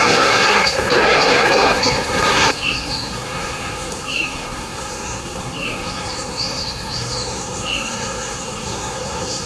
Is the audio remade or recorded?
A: remade